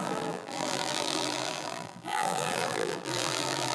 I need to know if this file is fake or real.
fake